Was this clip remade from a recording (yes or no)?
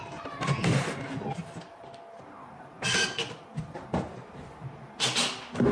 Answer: no